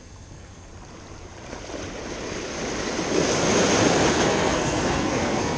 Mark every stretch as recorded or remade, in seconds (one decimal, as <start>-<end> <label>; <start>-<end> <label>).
0.0-0.7 remade; 0.7-4.1 recorded; 4.1-5.6 remade